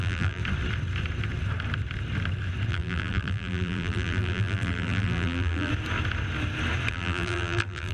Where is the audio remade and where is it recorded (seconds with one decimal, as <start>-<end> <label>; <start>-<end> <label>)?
0.0-0.4 remade; 0.4-2.7 recorded; 2.7-5.7 remade; 5.7-6.9 recorded; 6.9-7.9 remade